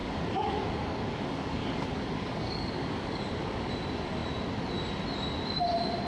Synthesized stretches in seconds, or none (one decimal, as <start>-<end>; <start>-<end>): 0.0-3.7